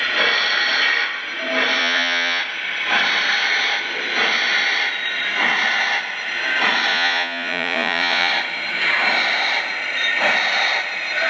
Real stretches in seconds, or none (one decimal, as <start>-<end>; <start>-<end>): 0.0-1.8; 2.4-6.9; 8.3-11.3